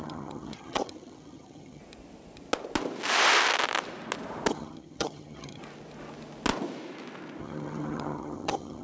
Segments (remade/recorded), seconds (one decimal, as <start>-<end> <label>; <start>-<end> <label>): 0.0-1.8 remade; 1.8-4.5 recorded; 4.5-5.6 remade; 5.6-7.4 recorded; 7.4-8.8 remade